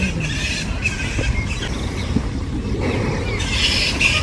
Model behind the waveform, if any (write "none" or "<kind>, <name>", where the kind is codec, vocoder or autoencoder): none